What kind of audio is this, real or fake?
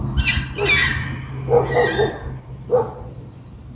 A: real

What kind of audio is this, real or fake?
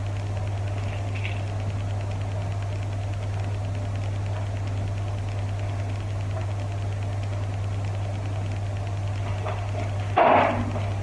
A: real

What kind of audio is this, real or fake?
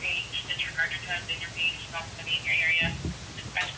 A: real